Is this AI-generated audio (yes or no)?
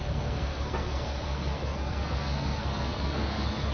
yes